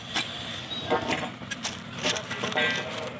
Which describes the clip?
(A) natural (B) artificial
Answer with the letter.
A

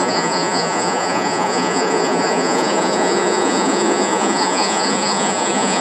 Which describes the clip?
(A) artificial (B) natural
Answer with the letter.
A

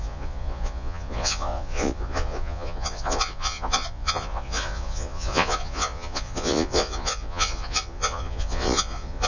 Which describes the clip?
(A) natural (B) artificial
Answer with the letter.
B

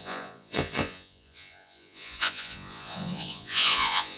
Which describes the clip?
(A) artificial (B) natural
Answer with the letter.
A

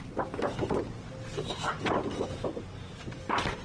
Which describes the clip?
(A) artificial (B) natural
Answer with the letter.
B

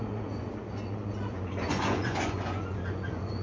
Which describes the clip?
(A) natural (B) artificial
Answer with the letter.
B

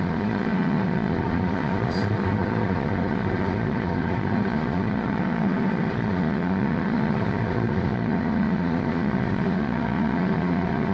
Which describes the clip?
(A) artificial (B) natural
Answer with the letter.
A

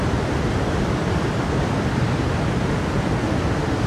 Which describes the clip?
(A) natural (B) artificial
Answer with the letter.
A